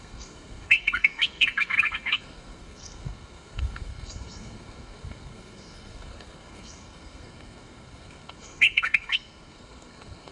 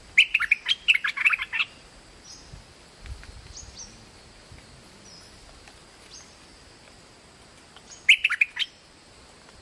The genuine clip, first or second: second